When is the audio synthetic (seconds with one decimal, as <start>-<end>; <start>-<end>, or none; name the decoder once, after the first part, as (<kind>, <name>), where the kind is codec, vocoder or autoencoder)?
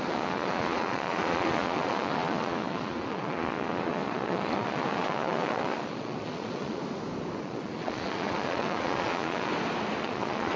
0.0-6.8 (vocoder, Vocos); 7.4-9.5; 10.0-10.6